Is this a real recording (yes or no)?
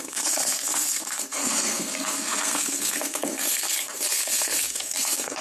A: no